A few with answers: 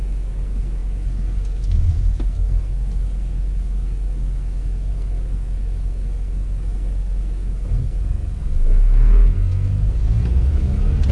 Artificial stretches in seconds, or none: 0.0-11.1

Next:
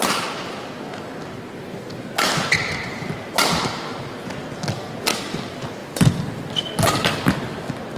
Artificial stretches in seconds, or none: 2.3-3.9; 5.8-6.6